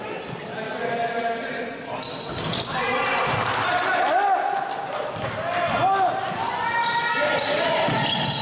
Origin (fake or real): real